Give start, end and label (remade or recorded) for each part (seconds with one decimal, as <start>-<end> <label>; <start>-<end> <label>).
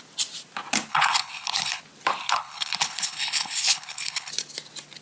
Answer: 0.0-0.9 recorded; 0.9-1.8 remade; 1.8-2.2 recorded; 2.2-4.3 remade; 4.3-5.0 recorded